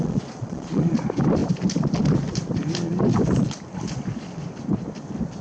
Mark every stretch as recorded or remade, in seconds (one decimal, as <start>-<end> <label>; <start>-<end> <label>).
0.0-0.9 remade; 0.9-5.4 recorded